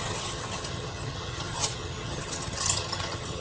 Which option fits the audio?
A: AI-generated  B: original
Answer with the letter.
A